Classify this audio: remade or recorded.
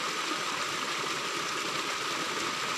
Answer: recorded